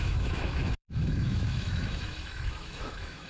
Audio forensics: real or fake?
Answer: fake